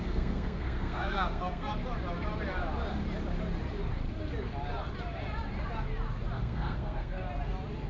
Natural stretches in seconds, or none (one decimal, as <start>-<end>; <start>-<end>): 1.7-6.4; 7.2-7.9